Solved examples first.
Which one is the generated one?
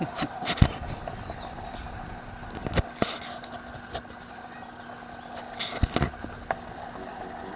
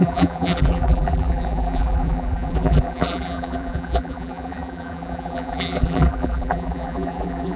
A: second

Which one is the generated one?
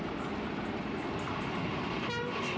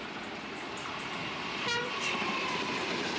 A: second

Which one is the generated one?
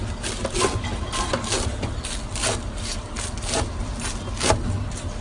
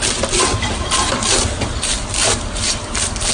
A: second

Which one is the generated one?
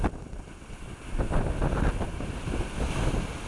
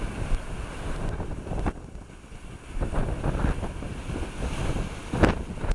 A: second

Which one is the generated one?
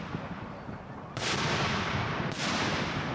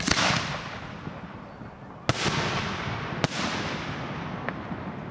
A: first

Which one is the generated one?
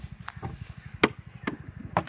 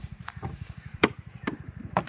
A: second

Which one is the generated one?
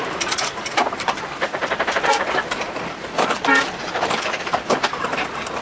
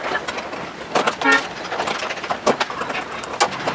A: first